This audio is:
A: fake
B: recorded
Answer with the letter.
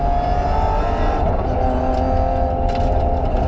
B